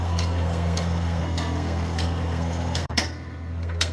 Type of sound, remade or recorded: remade